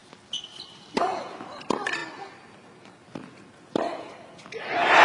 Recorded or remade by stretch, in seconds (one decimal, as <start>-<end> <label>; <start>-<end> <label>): 0.0-5.0 recorded